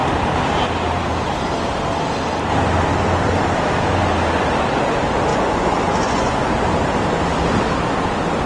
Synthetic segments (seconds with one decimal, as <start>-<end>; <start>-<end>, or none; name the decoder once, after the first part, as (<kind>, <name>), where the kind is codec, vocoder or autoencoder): 5.3-6.5 (vocoder, Vocos)